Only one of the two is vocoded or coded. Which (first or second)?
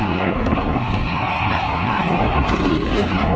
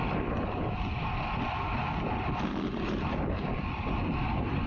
first